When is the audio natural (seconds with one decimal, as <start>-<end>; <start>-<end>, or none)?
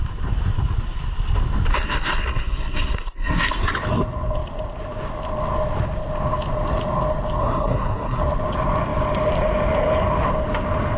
0.0-1.7; 3.6-7.4; 8.2-11.0